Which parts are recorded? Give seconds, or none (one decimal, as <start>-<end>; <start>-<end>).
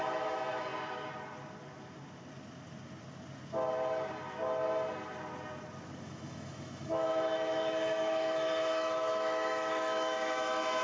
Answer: 0.7-6.0